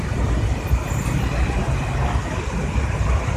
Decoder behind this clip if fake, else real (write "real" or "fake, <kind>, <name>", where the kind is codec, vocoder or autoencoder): real